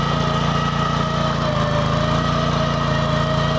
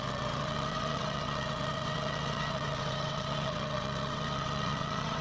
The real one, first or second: first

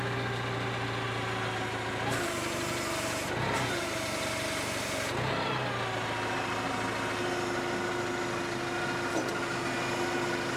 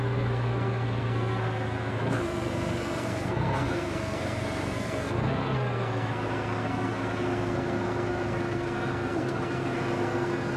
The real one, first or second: first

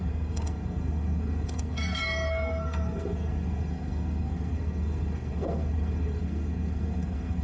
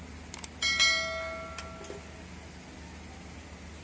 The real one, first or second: second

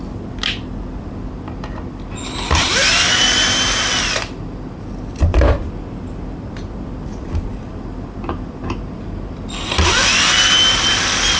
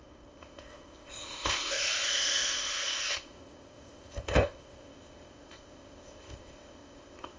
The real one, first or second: first